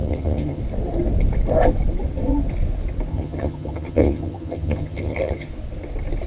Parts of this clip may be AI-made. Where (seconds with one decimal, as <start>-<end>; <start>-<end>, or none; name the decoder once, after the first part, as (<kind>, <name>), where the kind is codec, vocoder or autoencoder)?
0.0-0.6 (vocoder, HiFi-GAN); 3.1-5.5